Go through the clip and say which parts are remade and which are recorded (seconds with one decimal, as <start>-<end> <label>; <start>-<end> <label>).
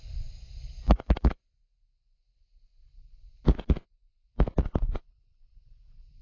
0.0-6.2 recorded